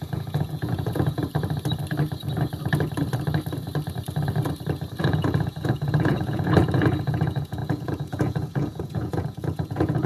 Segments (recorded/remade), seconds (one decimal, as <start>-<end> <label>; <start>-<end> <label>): 0.0-1.2 remade; 1.2-5.0 recorded; 5.0-10.1 remade